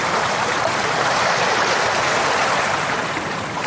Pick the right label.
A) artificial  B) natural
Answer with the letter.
A